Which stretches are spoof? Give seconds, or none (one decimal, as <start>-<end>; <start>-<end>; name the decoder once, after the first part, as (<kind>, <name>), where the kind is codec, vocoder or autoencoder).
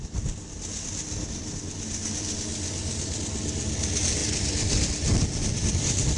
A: none